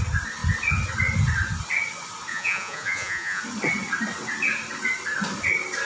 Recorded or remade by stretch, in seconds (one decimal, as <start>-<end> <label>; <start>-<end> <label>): 0.0-2.3 recorded; 2.3-3.4 remade; 3.4-5.9 recorded